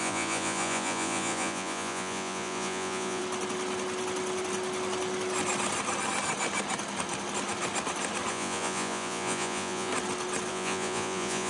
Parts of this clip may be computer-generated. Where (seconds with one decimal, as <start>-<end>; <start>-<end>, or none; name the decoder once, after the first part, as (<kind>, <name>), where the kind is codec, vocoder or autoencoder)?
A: 0.0-3.2 (vocoder, Vocos); 8.3-9.9; 10.5-11.5